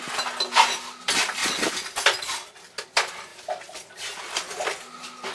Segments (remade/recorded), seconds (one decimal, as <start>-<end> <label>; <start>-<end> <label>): 0.0-5.3 recorded